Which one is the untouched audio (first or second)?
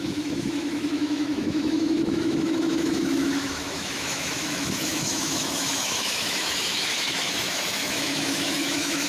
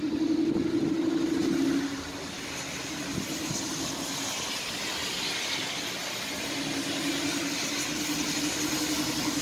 second